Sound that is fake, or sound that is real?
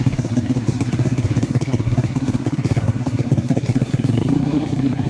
fake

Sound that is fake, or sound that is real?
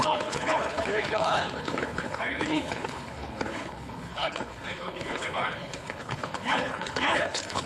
fake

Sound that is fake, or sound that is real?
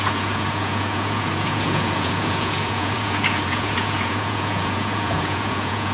fake